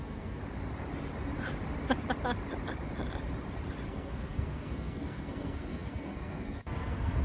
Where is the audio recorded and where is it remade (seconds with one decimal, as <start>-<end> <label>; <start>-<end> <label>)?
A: 0.0-0.4 remade; 0.4-3.9 recorded; 3.9-7.2 remade

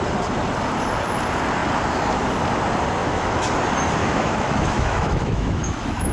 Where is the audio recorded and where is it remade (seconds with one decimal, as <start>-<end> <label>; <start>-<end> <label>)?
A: 0.0-3.0 recorded; 3.0-3.5 remade; 3.5-4.0 recorded; 4.0-6.1 remade

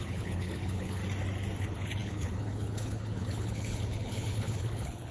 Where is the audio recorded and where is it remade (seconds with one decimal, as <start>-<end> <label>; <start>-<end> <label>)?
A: 0.0-1.0 remade; 1.0-1.6 recorded; 1.6-5.1 remade

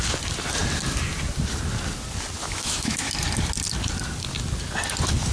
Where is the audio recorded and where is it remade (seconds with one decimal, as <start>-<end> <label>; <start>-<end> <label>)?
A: 0.0-2.4 recorded; 2.4-3.1 remade; 3.1-5.3 recorded

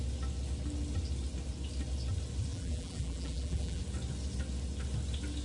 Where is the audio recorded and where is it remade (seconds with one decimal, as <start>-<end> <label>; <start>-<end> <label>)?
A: 0.0-2.5 recorded; 2.5-3.8 remade; 3.8-5.4 recorded

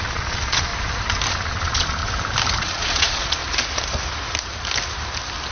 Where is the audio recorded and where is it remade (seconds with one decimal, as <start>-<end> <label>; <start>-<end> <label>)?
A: 0.0-0.7 remade; 0.7-1.3 recorded; 1.3-2.0 remade; 2.0-2.6 recorded; 2.6-3.4 remade; 3.4-5.5 recorded

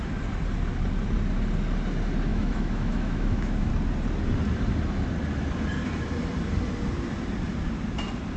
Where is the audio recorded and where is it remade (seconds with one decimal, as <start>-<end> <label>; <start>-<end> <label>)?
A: 0.0-2.3 recorded; 2.3-3.7 remade; 3.7-8.4 recorded

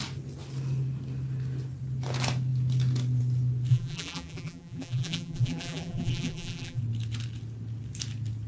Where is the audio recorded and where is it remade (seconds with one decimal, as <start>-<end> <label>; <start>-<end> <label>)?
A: 0.0-3.7 recorded; 3.7-6.8 remade; 6.8-8.5 recorded